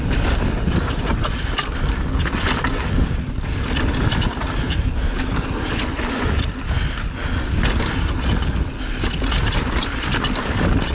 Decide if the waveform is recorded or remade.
recorded